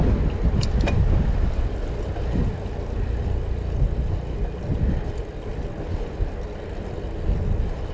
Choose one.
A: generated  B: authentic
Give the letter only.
B